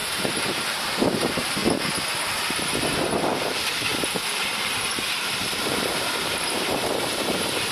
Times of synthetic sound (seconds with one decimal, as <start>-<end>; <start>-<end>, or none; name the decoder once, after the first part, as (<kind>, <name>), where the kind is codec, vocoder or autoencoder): 0.0-1.6 (vocoder, BigVGAN v2); 2.2-7.7